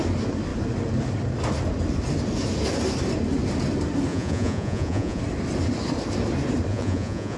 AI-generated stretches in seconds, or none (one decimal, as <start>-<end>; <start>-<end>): 4.1-5.2; 6.7-7.4